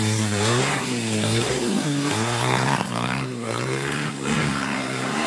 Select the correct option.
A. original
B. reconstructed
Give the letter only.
B